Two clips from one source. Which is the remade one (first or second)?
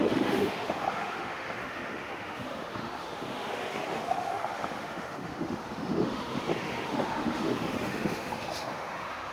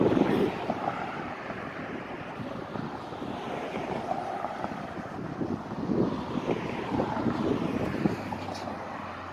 first